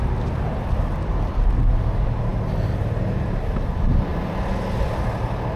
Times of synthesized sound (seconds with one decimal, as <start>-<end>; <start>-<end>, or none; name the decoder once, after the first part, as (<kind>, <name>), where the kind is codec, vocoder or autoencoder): none